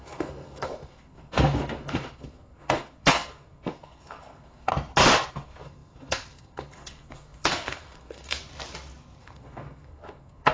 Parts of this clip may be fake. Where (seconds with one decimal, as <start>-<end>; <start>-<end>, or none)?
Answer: 0.0-4.7; 5.3-8.4; 9.2-10.5